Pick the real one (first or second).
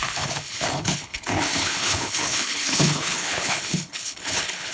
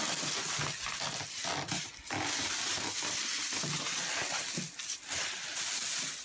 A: second